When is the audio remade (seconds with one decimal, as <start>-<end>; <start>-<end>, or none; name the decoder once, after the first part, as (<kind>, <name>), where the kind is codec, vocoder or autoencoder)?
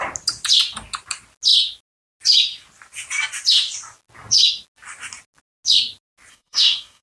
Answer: 6.3-7.0 (codec, DAC)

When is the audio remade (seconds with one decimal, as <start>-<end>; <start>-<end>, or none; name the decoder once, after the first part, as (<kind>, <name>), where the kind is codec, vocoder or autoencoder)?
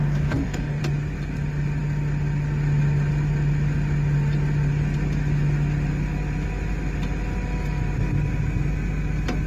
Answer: 0.0-0.8 (codec, DAC)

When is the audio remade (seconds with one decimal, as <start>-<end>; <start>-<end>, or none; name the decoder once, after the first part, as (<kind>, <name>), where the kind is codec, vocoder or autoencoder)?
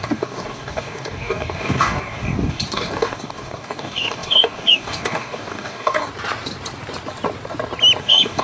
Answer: 0.0-6.1 (codec, DAC); 8.0-8.4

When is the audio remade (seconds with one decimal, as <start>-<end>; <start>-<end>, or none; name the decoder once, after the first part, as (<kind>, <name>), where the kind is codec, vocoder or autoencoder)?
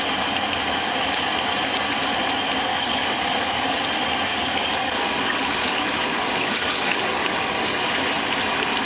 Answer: 2.7-3.8 (codec, DAC); 4.3-8.0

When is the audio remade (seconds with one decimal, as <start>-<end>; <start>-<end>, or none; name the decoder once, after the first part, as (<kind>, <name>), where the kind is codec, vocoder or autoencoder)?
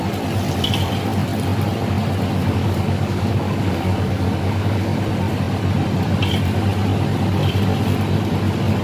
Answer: 2.4-5.0 (codec, DAC)